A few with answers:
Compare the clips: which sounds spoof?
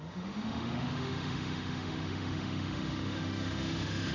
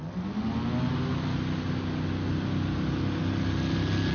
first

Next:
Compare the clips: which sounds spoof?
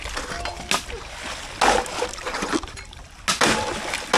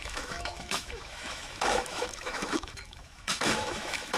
second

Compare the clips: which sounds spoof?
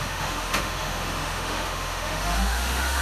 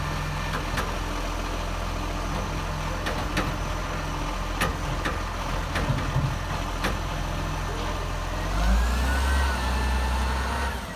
first